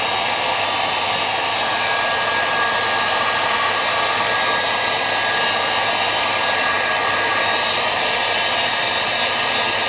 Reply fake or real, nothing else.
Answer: real